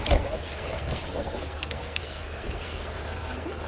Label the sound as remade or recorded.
remade